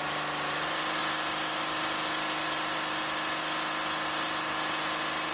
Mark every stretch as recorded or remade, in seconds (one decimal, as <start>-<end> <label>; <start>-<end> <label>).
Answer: 0.0-5.3 recorded